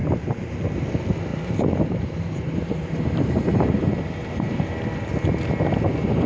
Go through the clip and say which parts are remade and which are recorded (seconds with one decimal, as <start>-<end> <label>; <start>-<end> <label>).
0.0-0.5 remade; 0.5-1.3 recorded; 1.3-4.7 remade; 4.7-6.3 recorded